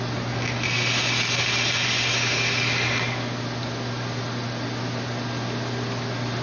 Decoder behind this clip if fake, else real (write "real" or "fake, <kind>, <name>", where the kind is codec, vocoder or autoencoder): real